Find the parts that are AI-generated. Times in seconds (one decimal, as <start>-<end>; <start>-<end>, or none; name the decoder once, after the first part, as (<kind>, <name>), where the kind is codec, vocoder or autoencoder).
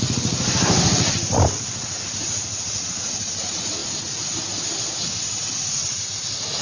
none